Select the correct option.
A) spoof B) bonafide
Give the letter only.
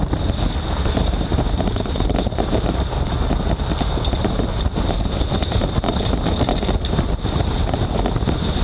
A